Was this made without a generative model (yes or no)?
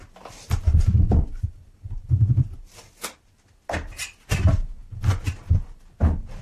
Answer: yes